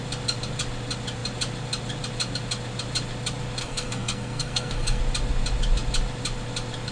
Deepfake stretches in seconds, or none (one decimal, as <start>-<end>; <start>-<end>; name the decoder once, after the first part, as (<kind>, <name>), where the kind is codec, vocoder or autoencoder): 3.6-5.0 (codec, SNAC)